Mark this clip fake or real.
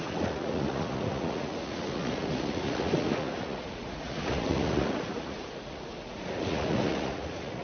fake